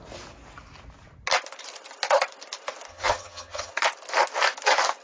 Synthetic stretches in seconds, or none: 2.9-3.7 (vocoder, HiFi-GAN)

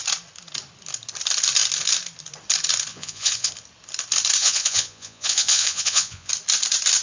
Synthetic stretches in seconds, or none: 2.9-3.5 (vocoder, Vocos); 4.4-6.3

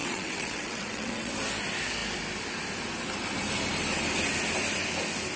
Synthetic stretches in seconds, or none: 0.0-1.3 (vocoder, WaveNeXt)

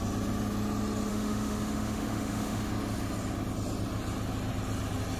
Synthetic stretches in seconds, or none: 1.1-2.7 (autoencoder, DAC-VAE)

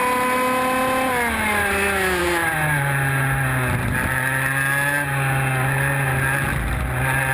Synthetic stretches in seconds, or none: none

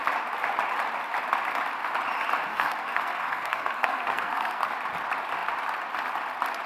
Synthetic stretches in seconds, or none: 2.5-4.7 (codec, SNAC)